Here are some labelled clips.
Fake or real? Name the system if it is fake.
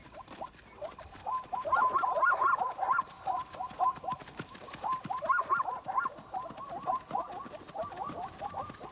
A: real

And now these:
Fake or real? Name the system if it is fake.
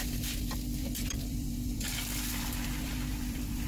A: fake, vocoder, BigVGAN v2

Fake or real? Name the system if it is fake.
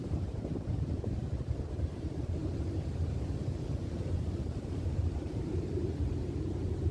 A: fake, vocoder, BigVGAN v2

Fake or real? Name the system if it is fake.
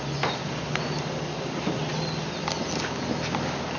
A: real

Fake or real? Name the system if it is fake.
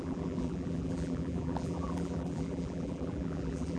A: fake, vocoder, BigVGAN v2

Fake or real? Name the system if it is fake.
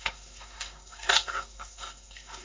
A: fake, codec, SNAC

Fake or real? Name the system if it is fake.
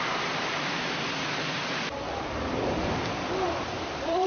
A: fake, vocoder, BigVGAN v2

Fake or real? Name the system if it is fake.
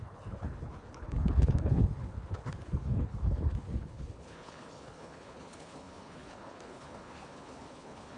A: fake, codec, HILCodec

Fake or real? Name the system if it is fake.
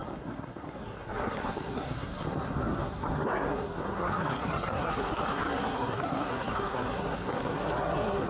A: fake, codec, SNAC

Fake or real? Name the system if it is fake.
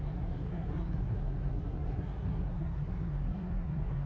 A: fake, codec, SNAC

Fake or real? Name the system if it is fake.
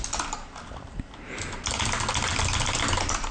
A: real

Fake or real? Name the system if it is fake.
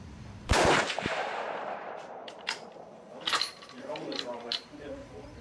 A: fake, vocoder, BigVGAN v2